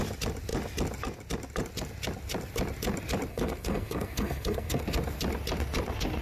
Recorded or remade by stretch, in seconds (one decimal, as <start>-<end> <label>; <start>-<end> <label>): 0.0-3.3 recorded; 3.3-4.8 remade; 4.8-6.2 recorded